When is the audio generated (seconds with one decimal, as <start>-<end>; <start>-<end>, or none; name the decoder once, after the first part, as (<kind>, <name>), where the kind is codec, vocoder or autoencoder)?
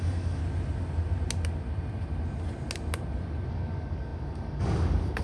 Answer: 0.0-0.4 (codec, DAC); 3.5-5.2